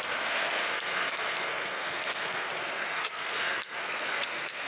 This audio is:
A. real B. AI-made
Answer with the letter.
B